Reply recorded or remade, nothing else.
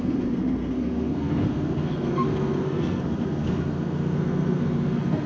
remade